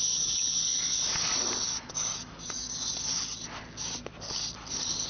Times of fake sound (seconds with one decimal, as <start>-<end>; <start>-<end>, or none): 2.1-2.7